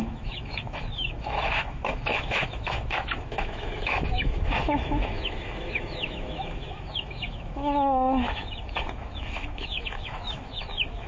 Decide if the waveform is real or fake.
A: fake